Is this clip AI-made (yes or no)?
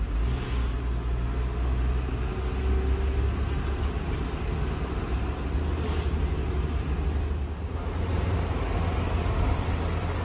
no